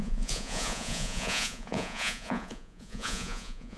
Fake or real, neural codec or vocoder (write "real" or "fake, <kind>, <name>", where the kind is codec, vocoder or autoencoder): fake, vocoder, Vocos